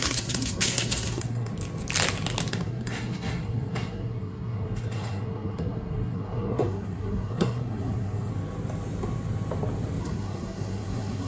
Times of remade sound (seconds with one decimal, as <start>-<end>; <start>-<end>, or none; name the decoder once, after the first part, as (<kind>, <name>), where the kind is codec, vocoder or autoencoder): 0.0-1.5 (codec, SNAC); 2.5-8.3; 10.0-11.3